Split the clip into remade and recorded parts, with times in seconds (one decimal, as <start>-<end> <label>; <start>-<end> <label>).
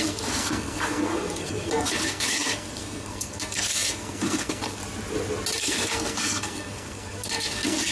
0.0-4.8 remade; 4.8-5.6 recorded; 5.6-7.9 remade